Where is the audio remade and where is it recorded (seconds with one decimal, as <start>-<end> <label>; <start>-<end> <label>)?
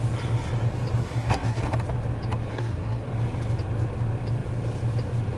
0.0-1.0 recorded; 1.0-1.6 remade; 1.6-2.5 recorded; 2.5-3.1 remade; 3.1-5.4 recorded